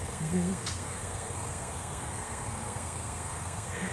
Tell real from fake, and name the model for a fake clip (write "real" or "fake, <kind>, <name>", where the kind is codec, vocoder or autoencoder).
fake, codec, SNAC